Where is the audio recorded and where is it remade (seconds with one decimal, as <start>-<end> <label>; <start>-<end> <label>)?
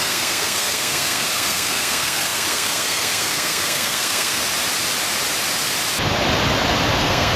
0.0-4.4 remade; 4.4-7.0 recorded; 7.0-7.4 remade